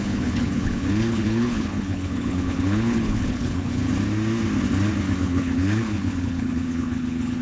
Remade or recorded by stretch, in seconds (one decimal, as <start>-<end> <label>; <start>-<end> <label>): 0.0-3.9 remade; 3.9-5.2 recorded; 5.2-7.4 remade